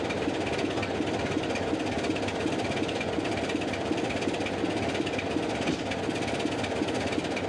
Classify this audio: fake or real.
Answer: real